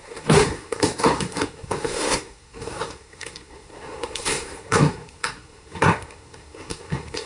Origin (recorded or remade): remade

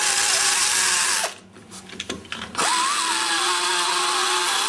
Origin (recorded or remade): recorded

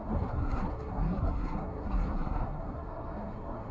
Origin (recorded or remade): remade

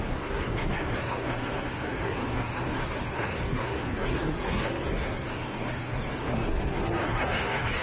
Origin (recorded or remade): remade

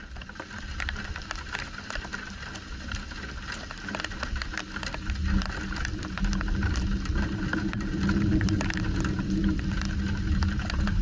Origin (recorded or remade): recorded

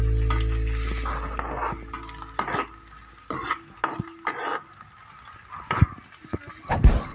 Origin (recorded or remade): recorded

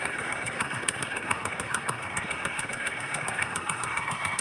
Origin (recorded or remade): remade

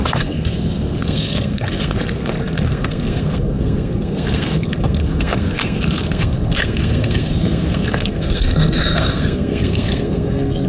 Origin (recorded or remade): remade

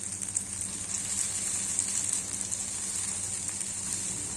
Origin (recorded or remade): recorded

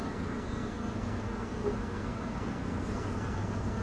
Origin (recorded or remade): remade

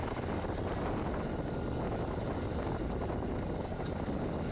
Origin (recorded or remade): recorded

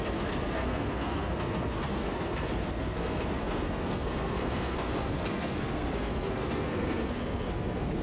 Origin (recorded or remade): remade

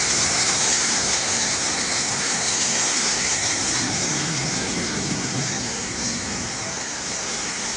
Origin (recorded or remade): remade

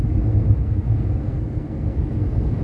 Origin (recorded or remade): remade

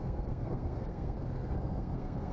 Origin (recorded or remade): remade